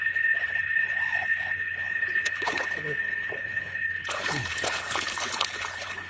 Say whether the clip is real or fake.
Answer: fake